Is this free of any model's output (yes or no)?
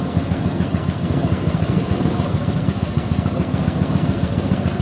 no